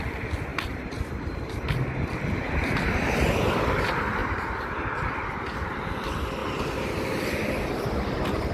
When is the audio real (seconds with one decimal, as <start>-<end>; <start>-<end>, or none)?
0.0-4.2; 5.7-8.5